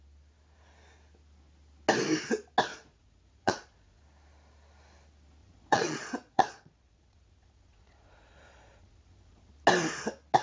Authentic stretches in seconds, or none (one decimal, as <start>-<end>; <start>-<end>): 0.0-2.7; 4.0-5.4; 9.5-10.4

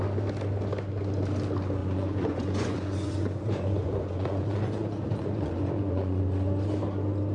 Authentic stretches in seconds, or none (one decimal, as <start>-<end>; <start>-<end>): 0.0-1.8; 6.2-7.3

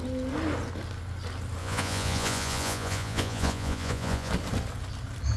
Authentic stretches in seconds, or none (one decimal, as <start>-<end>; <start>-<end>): 0.0-1.6; 4.3-5.4

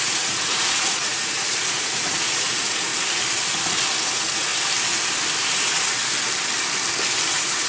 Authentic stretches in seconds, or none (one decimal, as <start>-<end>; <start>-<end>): 2.9-4.0; 4.5-5.4; 6.0-7.3

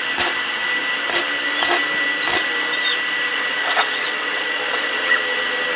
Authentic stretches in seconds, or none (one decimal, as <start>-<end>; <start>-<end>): 0.0-3.3; 5.0-5.8